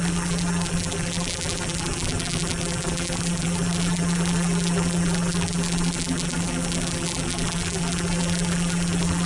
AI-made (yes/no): yes